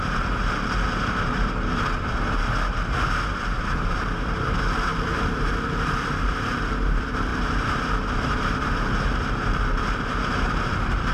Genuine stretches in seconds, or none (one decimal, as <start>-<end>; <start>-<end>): none